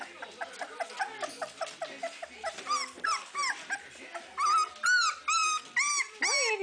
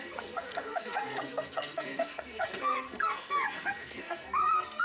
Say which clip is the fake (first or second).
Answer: second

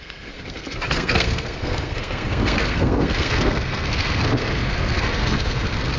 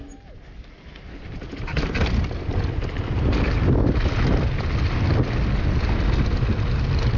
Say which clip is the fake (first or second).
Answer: first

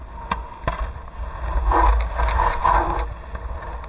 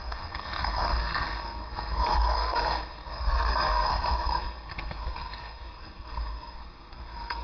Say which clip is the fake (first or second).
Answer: second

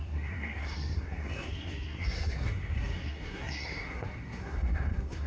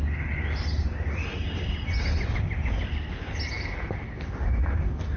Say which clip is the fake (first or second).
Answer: first